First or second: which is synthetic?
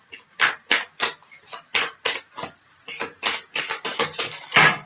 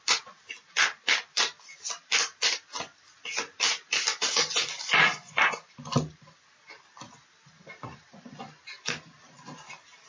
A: second